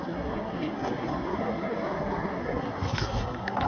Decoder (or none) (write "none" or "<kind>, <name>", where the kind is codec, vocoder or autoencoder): codec, SNAC